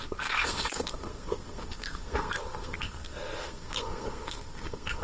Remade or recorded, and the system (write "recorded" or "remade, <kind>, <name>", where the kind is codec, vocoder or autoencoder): remade, codec, SNAC